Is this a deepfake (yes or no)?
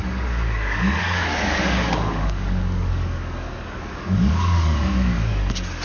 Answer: yes